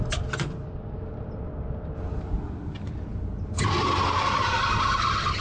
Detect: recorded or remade recorded